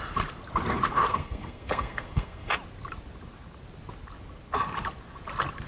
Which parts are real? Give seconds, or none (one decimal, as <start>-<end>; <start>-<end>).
0.0-1.1; 2.5-5.7